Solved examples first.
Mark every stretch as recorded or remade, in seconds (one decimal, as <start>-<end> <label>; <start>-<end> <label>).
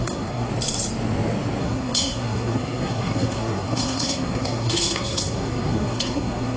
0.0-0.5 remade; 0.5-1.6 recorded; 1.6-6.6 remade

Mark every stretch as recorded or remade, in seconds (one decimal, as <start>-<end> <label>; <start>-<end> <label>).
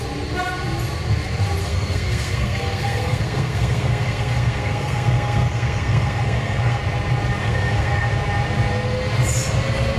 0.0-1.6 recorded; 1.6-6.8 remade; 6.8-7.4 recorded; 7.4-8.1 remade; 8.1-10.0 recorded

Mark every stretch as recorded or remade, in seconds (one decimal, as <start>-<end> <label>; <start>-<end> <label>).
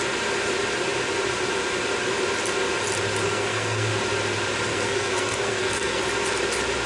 0.0-3.2 recorded; 3.2-3.9 remade; 3.9-4.7 recorded; 4.7-6.0 remade; 6.0-6.9 recorded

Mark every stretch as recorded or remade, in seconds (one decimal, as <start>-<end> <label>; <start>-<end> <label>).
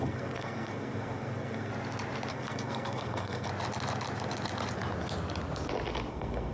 0.0-1.7 remade; 1.7-2.3 recorded; 2.3-3.5 remade; 3.5-6.1 recorded; 6.1-6.5 remade